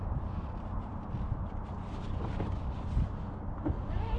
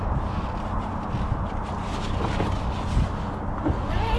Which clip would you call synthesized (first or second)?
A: first